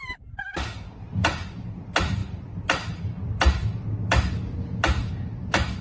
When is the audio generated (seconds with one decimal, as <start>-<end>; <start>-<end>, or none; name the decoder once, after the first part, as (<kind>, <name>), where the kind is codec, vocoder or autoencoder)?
none